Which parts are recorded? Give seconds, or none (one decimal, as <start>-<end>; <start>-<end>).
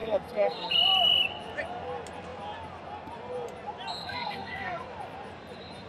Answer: 0.7-4.0; 4.8-5.9